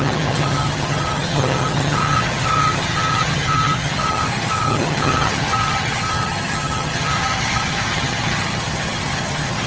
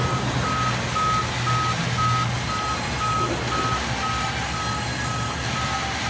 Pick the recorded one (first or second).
second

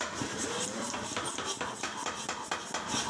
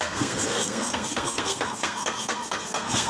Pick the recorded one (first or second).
first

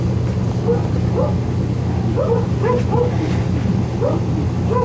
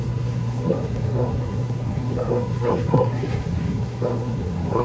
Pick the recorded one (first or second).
first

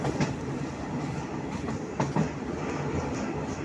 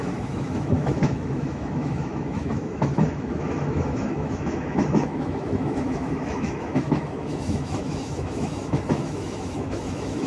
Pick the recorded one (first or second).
first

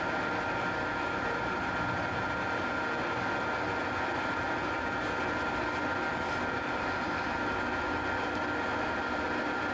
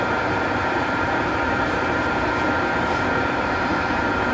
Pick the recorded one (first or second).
first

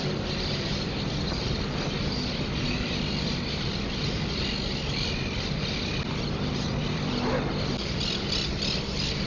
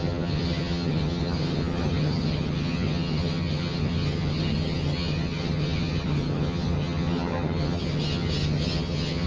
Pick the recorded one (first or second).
first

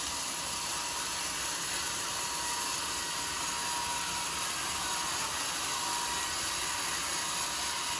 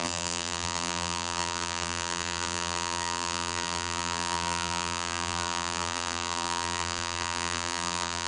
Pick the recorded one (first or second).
first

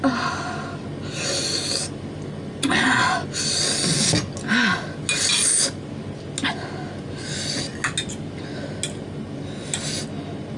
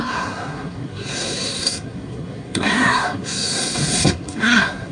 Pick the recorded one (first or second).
first